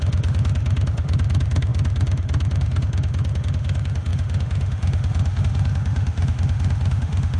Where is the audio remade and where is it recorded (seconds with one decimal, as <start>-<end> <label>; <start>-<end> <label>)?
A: 0.0-7.4 remade